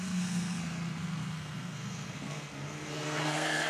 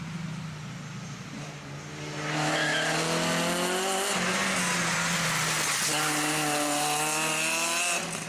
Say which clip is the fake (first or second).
first